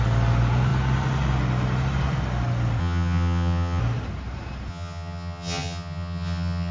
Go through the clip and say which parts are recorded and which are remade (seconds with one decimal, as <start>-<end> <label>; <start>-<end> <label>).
0.0-2.8 recorded; 2.8-3.8 remade; 3.8-4.7 recorded; 4.7-6.7 remade